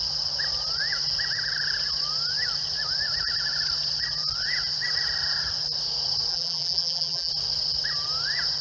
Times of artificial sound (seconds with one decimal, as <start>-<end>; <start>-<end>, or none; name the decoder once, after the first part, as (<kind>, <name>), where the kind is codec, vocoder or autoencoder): 6.3-7.3 (vocoder, BigVGAN v2)